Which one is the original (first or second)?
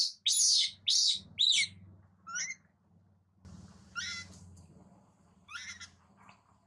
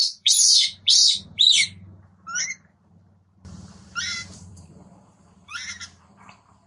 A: first